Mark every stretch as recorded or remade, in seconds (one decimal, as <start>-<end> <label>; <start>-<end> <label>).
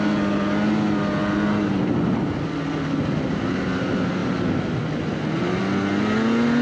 0.0-6.6 recorded